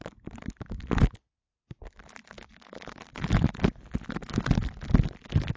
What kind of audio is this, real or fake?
real